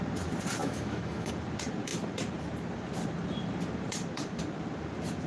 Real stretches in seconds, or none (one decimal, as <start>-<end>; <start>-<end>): 0.0-0.6; 1.3-5.3

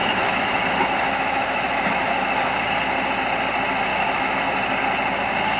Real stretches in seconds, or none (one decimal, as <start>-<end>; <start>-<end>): 2.1-3.9; 4.4-5.6

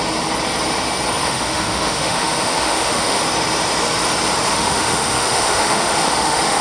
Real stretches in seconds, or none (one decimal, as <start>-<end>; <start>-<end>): 0.0-1.2; 3.2-4.5